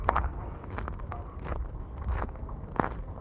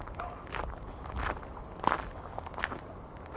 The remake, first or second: first